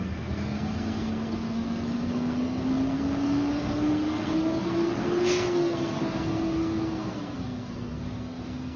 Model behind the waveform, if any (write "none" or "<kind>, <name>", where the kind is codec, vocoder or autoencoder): codec, SNAC